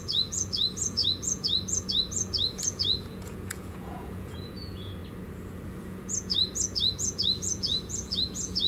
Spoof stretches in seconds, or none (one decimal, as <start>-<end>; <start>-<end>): 0.0-5.0; 5.8-8.7